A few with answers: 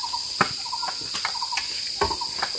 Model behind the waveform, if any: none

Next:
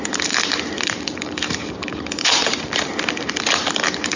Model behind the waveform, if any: vocoder, BigVGAN v2